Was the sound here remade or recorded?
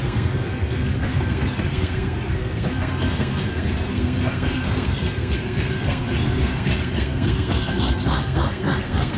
remade